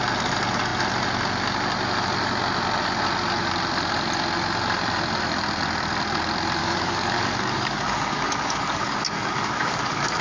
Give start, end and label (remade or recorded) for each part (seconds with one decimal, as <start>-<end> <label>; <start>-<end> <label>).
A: 0.0-6.6 recorded; 6.6-10.2 remade